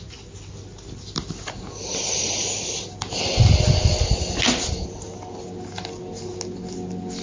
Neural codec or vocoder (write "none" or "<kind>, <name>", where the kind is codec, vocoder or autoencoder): none